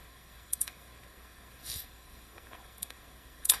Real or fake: fake